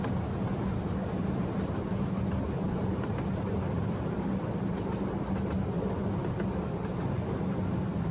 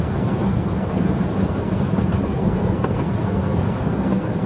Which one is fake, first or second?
second